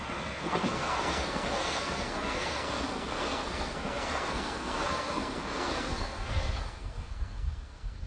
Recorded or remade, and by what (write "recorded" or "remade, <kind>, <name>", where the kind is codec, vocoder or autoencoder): remade, codec, SNAC